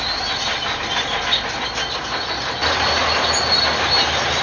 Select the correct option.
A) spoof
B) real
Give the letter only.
B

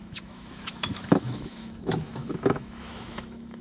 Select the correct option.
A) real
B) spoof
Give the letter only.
B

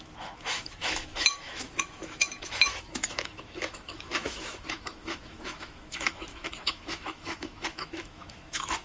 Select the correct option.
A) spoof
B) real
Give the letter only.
A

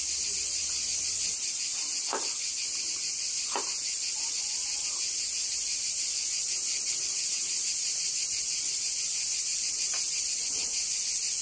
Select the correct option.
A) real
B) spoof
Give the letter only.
A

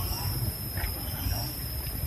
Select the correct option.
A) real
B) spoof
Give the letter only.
A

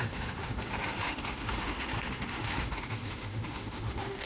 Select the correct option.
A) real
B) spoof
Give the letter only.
B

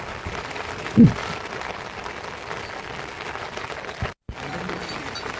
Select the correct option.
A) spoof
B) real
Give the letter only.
B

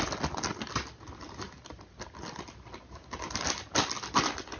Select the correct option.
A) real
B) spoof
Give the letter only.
A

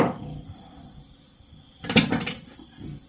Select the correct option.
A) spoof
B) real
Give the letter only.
B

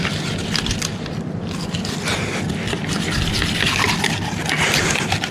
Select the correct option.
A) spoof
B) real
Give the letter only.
B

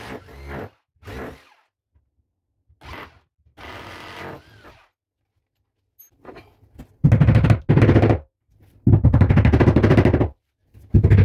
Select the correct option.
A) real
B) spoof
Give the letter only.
A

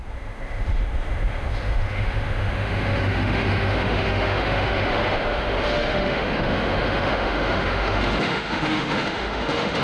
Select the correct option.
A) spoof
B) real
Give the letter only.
A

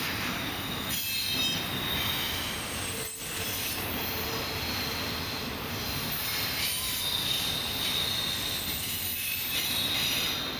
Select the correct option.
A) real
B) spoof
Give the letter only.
A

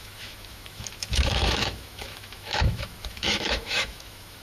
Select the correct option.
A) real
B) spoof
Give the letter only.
B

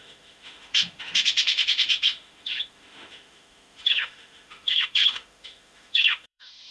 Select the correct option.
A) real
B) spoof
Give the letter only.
B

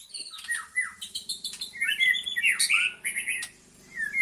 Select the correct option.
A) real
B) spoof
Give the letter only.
A